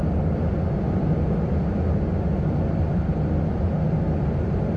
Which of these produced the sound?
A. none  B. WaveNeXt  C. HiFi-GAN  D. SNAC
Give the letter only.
A